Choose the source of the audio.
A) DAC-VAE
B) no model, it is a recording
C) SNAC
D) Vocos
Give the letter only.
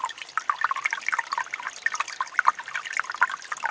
B